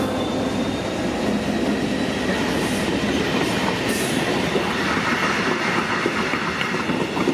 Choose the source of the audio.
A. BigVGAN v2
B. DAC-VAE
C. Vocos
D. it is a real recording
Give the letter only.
D